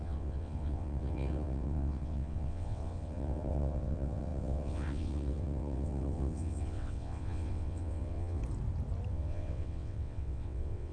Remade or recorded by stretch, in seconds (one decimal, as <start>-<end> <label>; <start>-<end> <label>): 0.0-8.4 remade; 8.4-9.1 recorded; 9.1-10.9 remade